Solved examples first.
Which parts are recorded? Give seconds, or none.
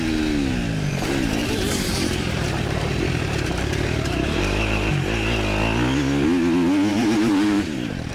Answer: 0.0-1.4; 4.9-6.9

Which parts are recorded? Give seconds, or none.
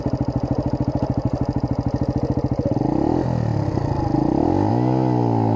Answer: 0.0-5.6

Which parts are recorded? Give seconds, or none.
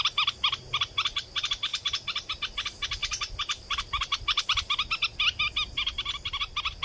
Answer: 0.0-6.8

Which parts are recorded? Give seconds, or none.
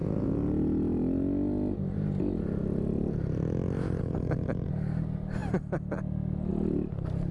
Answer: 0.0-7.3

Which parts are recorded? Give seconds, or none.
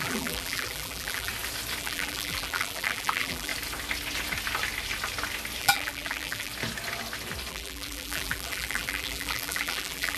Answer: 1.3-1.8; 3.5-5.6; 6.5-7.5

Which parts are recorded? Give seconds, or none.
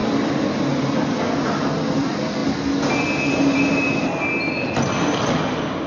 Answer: 0.0-5.9